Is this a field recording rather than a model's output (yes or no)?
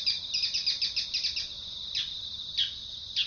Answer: yes